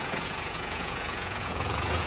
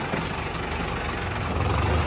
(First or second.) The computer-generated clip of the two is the first